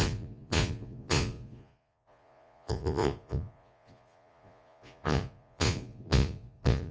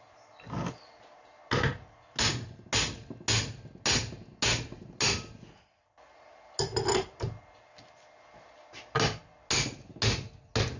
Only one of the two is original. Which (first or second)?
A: second